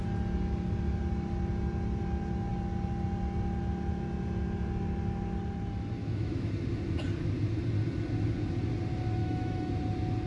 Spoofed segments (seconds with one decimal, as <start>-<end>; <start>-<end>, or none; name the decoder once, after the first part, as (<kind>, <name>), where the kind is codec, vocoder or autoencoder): 6.0-6.5 (autoencoder, DAC-VAE); 9.2-9.7